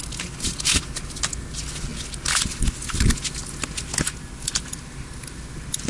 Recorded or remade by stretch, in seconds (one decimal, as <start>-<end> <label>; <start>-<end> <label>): 0.0-5.9 recorded